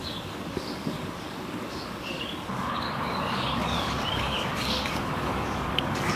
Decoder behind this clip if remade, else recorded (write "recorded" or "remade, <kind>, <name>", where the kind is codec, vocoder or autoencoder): remade, codec, DAC